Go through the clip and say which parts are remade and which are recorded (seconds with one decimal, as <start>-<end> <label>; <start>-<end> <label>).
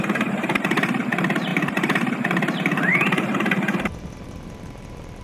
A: 0.0-5.2 remade